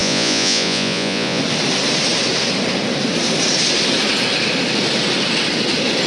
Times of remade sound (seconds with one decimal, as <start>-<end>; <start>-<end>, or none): 0.0-1.4